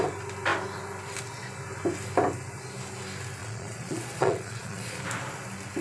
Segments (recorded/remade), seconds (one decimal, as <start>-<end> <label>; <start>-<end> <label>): 0.0-3.4 recorded; 3.4-5.0 remade; 5.0-5.8 recorded